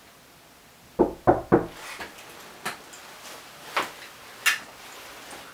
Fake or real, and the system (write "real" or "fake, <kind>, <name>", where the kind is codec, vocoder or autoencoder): real